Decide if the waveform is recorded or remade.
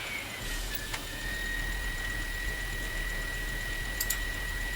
remade